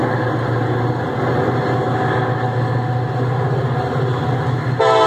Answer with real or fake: real